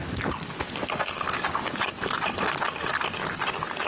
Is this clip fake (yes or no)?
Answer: no